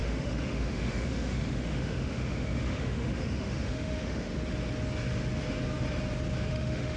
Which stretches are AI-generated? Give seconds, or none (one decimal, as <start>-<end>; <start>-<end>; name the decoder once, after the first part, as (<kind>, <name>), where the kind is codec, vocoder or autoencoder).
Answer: 0.0-4.3 (autoencoder, DAC-VAE); 6.5-7.0